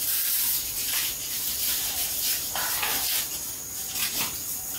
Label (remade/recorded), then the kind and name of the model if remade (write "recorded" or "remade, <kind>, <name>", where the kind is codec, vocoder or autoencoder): recorded